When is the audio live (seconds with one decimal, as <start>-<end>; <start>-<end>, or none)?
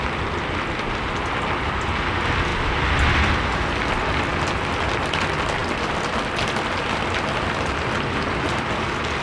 0.0-9.2